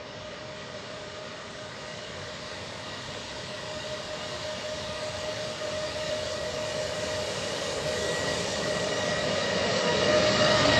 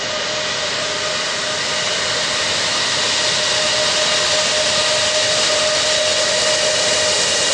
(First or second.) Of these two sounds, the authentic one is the second